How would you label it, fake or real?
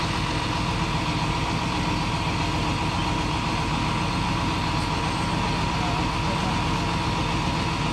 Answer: real